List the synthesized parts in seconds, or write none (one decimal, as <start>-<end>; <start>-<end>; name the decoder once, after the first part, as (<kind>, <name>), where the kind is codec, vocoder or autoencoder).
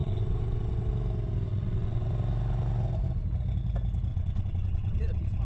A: 0.0-0.9 (vocoder, WaveNeXt); 1.5-2.1; 4.1-5.4